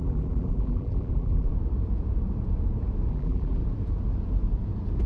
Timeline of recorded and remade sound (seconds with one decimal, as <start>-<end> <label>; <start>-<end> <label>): 0.0-1.5 remade; 1.5-3.1 recorded; 3.1-3.6 remade; 3.6-5.1 recorded

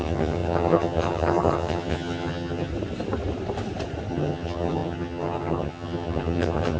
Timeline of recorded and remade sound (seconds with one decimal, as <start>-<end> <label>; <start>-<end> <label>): 0.0-2.7 remade; 2.7-4.1 recorded; 4.1-6.8 remade

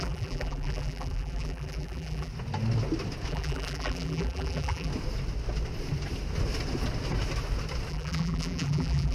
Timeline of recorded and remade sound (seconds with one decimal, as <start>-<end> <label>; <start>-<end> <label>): 0.0-2.3 remade; 2.3-3.3 recorded; 3.3-4.9 remade; 4.9-7.9 recorded; 7.9-9.1 remade

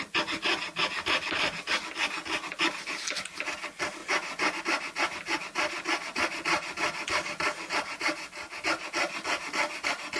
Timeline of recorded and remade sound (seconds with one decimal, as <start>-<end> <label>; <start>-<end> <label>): 0.0-4.0 recorded; 4.0-4.6 remade; 4.6-10.2 recorded